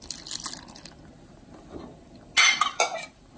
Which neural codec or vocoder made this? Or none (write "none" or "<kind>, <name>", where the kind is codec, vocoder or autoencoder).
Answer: none